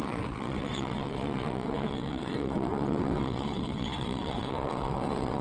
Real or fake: fake